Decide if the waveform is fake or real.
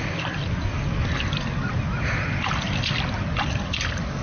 real